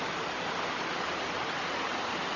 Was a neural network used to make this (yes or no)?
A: yes